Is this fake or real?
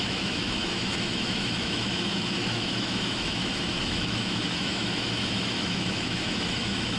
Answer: fake